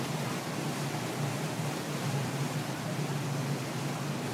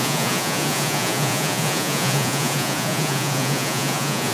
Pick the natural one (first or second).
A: first